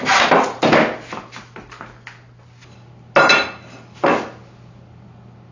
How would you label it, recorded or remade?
recorded